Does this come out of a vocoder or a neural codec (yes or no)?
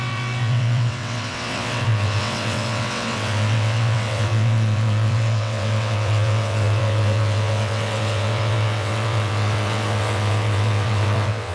yes